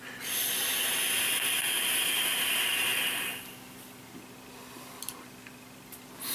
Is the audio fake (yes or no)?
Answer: no